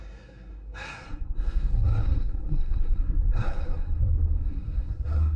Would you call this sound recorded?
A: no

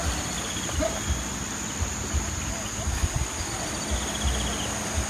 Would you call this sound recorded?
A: yes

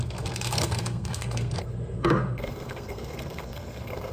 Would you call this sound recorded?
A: no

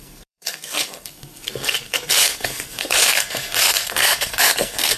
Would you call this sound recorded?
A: no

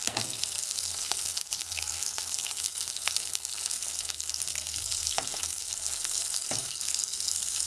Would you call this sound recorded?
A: no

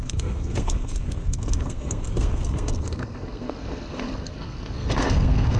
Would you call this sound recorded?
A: no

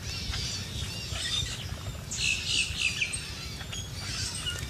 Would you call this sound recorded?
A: yes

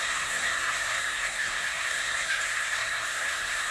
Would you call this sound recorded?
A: no